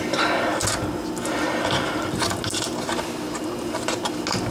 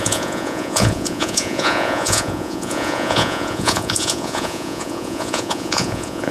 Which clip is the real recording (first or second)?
first